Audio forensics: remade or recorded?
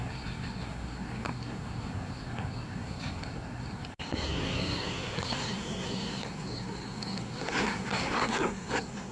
remade